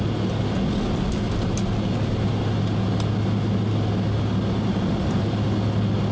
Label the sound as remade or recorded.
recorded